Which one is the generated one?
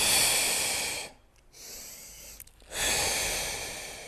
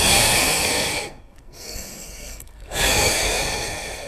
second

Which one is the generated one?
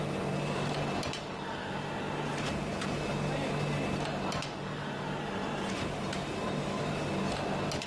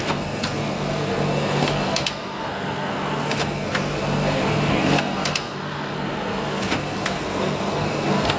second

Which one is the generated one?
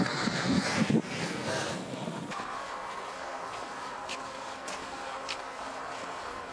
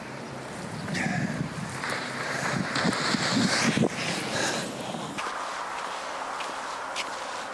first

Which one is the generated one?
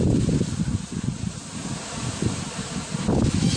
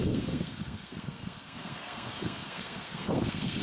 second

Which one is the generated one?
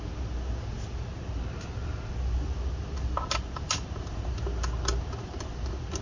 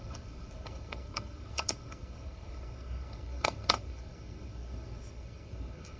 second